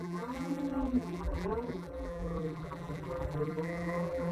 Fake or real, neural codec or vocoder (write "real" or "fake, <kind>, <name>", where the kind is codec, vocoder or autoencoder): fake, vocoder, BigVGAN v2